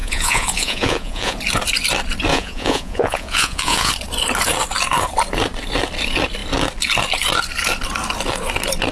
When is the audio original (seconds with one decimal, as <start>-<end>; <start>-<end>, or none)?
1.4-2.3; 3.9-8.9